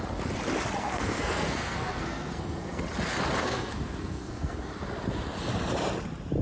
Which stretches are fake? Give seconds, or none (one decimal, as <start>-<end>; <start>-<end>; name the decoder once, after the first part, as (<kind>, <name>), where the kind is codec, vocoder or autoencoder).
0.8-2.8 (codec, SNAC); 3.4-4.7